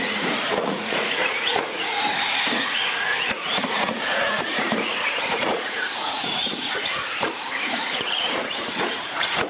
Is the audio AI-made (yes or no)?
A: yes